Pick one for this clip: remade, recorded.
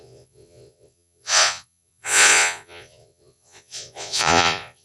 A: remade